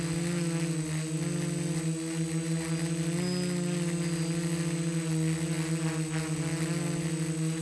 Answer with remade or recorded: recorded